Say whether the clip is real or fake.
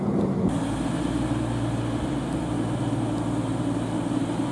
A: real